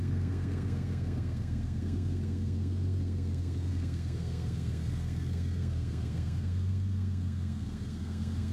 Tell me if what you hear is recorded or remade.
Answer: remade